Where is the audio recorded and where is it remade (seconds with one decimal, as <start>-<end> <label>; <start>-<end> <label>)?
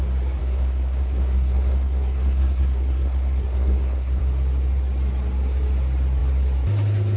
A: 0.0-0.4 recorded; 0.4-4.2 remade; 4.2-7.2 recorded